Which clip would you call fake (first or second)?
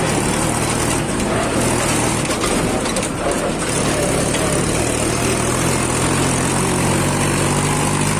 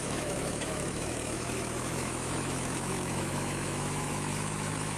second